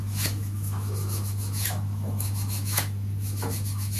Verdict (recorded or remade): remade